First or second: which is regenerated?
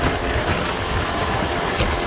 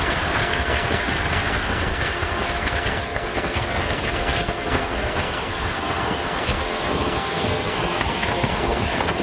second